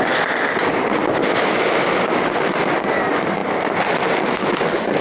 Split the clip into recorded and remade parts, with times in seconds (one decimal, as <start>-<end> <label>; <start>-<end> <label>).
0.0-5.0 recorded